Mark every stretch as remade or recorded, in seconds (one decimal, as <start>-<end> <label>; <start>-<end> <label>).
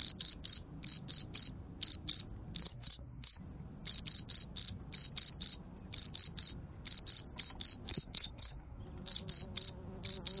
0.0-2.6 recorded; 2.6-3.4 remade; 3.4-7.9 recorded; 7.9-8.8 remade; 8.8-10.4 recorded